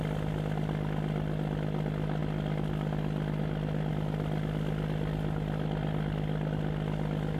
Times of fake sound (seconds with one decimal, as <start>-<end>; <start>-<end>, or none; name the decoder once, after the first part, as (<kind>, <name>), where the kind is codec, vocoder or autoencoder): none